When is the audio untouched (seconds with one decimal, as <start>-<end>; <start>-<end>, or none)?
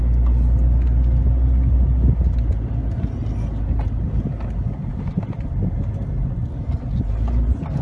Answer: 0.0-4.9; 6.3-7.8